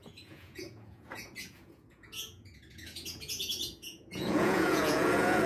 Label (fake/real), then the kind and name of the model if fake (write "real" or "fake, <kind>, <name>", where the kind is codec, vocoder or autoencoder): fake, vocoder, Vocos